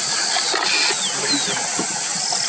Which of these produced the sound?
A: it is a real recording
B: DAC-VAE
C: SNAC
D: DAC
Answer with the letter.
A